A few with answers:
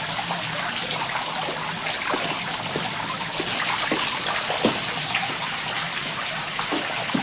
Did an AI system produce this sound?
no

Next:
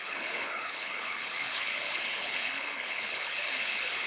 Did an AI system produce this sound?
yes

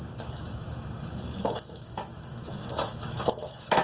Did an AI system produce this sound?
yes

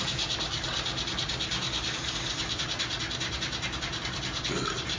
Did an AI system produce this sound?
no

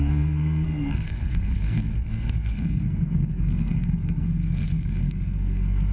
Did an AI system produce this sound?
yes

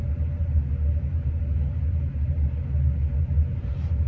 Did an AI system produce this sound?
no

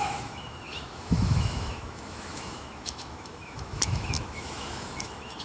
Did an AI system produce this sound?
yes